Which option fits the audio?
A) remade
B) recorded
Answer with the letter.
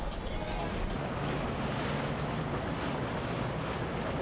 B